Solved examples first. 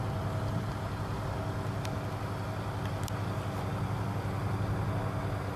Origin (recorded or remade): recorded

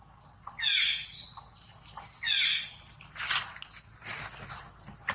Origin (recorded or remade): recorded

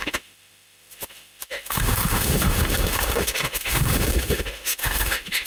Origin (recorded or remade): remade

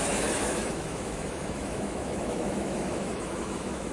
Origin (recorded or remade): remade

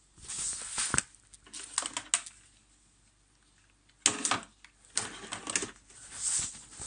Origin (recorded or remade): recorded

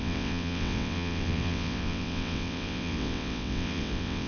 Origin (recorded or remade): remade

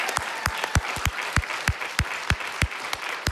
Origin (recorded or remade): remade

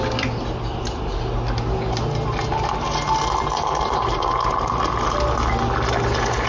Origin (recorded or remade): recorded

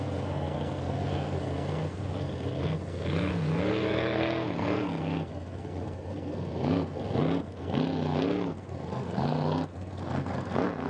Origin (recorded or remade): remade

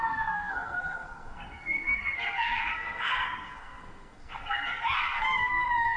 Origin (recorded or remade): remade